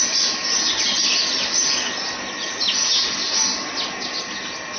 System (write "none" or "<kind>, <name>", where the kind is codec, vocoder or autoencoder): none